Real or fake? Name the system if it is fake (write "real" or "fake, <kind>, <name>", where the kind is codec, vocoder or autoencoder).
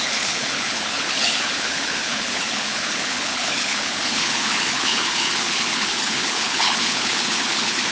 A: fake, codec, HILCodec